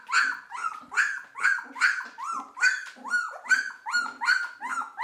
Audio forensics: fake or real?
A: real